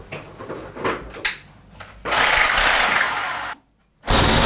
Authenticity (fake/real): real